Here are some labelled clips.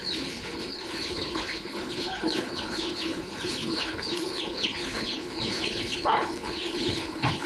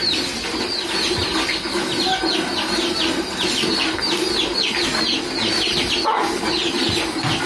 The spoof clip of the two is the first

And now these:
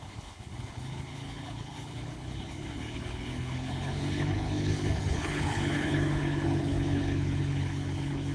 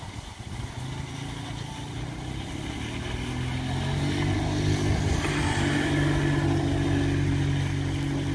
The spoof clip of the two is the first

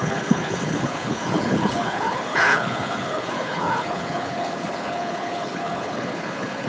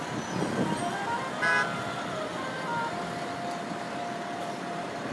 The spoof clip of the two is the first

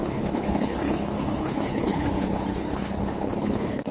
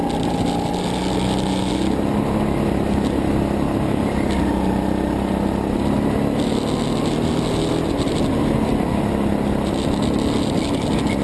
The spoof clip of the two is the first